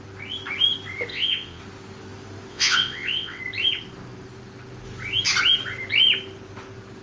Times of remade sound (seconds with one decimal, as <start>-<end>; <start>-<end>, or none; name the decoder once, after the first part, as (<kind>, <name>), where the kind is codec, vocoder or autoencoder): 1.1-1.6 (vocoder, WaveNeXt); 2.5-3.4

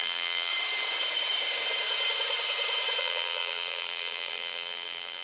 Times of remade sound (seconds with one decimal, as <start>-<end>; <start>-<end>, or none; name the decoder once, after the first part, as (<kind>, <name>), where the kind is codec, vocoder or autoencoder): 0.0-0.5 (vocoder, BigVGAN v2); 3.0-5.2

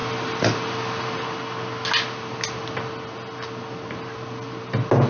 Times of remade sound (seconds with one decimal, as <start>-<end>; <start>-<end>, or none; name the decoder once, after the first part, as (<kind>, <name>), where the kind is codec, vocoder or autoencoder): none

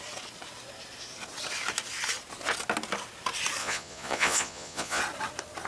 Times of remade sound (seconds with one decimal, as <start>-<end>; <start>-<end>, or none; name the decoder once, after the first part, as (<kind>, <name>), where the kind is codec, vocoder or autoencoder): 3.6-5.0 (vocoder, Vocos)

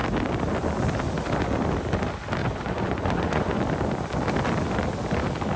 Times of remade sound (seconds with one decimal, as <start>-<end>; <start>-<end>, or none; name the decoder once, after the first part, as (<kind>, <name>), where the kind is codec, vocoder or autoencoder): 2.4-3.6 (vocoder, Vocos)

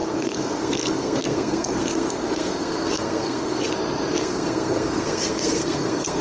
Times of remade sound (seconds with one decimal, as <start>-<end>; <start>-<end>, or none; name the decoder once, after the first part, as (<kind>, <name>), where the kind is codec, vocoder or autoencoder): 0.0-3.7 (codec, SNAC); 4.2-6.2